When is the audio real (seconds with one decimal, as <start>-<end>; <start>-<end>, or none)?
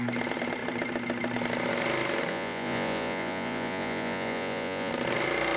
0.0-2.3; 4.9-5.6